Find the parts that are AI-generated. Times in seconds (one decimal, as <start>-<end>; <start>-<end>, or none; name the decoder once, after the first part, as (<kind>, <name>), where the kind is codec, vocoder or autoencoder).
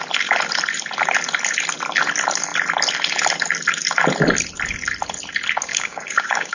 5.7-6.5 (codec, DAC)